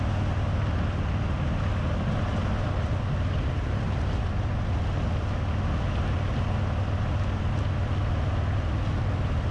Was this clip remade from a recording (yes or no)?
no